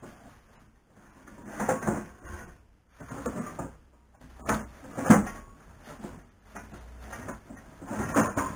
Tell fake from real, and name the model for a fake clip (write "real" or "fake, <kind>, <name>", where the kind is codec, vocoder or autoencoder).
real